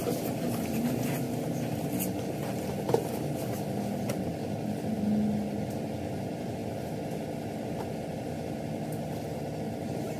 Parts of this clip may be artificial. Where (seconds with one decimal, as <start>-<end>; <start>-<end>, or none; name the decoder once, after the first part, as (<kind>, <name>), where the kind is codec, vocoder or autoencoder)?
none

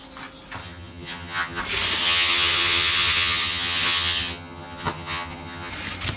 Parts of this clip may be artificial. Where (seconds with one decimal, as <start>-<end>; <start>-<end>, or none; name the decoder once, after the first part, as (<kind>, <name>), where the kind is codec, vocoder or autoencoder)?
0.6-1.6 (vocoder, HiFi-GAN); 2.0-5.7